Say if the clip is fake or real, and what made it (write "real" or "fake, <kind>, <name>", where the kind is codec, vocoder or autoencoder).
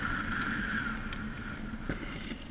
real